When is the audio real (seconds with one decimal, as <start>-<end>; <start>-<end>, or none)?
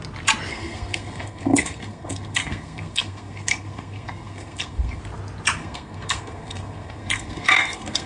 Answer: 0.0-0.5; 5.0-5.6